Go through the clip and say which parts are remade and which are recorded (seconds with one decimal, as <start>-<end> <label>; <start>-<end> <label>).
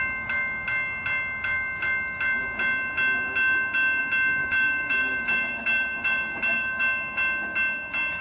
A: 0.0-4.4 recorded; 4.4-6.8 remade; 6.8-8.2 recorded